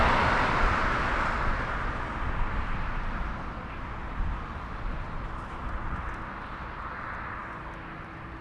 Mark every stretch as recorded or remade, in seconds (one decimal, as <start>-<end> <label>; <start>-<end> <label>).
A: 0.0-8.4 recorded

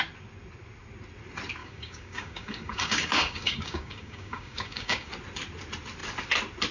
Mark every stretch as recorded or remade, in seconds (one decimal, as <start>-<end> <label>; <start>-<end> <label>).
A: 0.0-1.6 recorded; 1.6-5.1 remade; 5.1-6.7 recorded

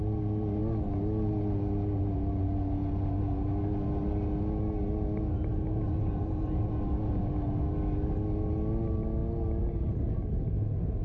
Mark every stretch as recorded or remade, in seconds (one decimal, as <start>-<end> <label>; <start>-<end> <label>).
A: 0.0-5.5 recorded; 5.5-7.2 remade; 7.2-11.0 recorded

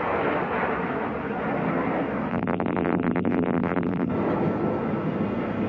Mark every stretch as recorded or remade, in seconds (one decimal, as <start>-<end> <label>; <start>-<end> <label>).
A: 0.0-2.3 recorded; 2.3-4.1 remade; 4.1-5.7 recorded

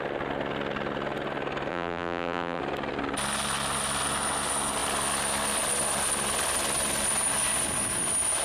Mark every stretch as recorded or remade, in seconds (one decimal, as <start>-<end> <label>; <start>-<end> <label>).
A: 0.0-1.7 recorded; 1.7-2.6 remade; 2.6-8.4 recorded

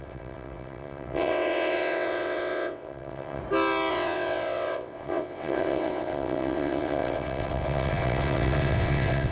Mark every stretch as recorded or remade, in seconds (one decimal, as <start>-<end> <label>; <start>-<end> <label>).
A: 0.0-3.4 remade; 3.4-3.9 recorded; 3.9-9.3 remade

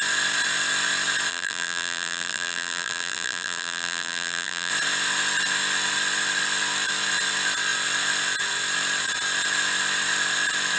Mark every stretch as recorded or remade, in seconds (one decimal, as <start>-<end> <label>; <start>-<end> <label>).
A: 0.0-1.3 recorded; 1.3-4.7 remade; 4.7-10.8 recorded

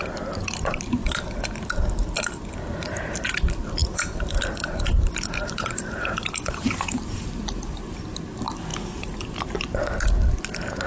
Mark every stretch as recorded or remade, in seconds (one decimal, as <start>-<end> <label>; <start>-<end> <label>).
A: 0.0-3.8 recorded; 3.8-7.8 remade; 7.8-10.9 recorded